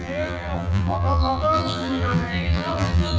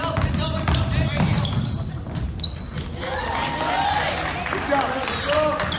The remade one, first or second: first